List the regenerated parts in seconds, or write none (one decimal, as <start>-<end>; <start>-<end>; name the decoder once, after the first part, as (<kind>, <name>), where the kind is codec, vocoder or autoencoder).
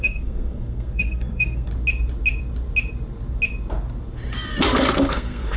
0.0-1.7 (codec, SNAC); 5.1-5.6